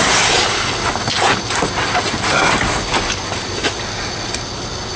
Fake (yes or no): no